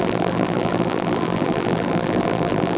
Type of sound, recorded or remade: remade